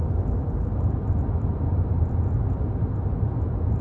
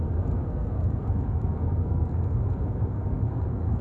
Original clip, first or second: first